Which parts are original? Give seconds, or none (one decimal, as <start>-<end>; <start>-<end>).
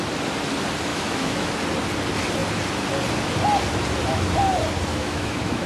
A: 0.0-0.9; 1.5-4.9